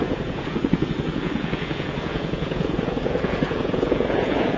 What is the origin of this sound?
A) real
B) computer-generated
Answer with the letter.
B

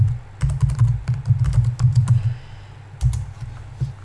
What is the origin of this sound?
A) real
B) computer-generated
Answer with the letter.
A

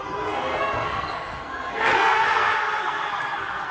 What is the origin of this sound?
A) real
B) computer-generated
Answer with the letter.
B